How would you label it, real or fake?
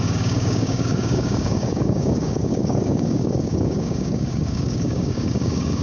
fake